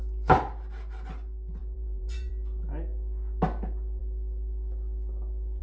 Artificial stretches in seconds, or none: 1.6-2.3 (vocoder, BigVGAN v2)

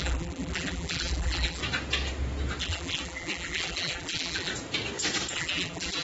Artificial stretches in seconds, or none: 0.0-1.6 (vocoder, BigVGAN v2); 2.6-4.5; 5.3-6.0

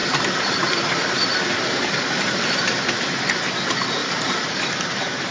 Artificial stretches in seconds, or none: 0.0-3.2 (vocoder, BigVGAN v2); 4.0-5.3

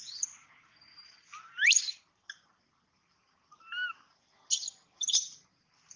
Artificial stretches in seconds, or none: none

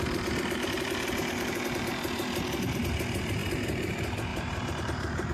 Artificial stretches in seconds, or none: 3.4-3.9 (vocoder, BigVGAN v2); 4.3-5.3

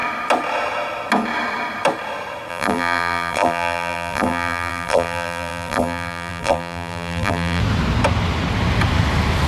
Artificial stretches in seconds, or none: 2.5-7.6 (vocoder, BigVGAN v2)